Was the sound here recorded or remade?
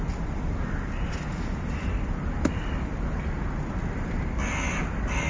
recorded